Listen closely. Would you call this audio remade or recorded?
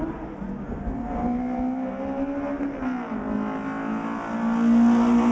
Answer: recorded